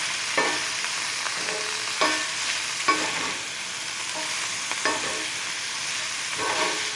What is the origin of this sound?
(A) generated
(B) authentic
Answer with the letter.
B